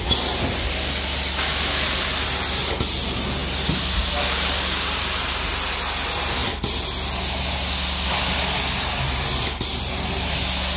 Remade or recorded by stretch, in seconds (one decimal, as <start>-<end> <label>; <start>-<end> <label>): 0.0-10.8 recorded